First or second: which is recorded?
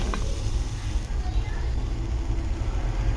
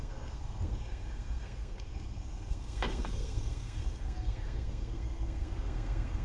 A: first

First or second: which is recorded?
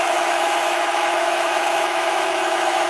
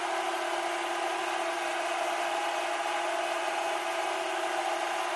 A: second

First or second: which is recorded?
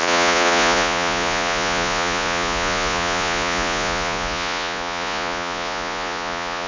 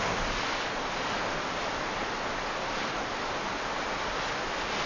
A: second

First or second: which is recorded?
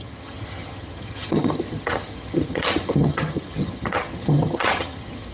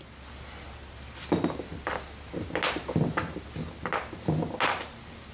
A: second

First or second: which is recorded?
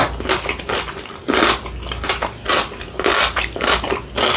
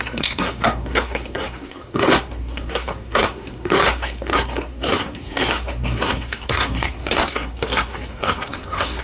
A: first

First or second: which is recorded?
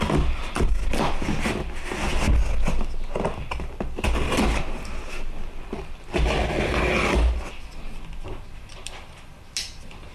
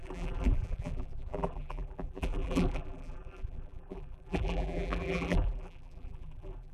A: first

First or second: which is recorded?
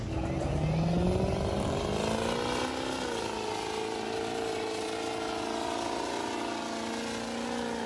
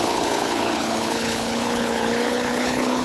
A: first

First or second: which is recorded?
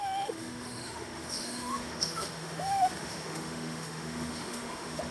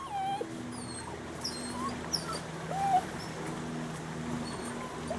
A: second